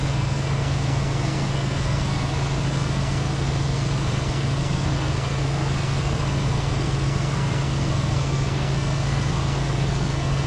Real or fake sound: fake